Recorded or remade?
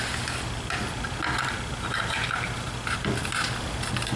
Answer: recorded